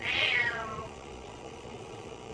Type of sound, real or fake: fake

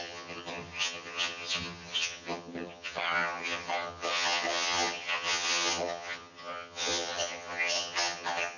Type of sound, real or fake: fake